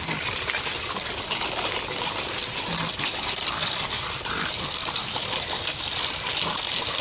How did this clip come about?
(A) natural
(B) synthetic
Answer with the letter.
A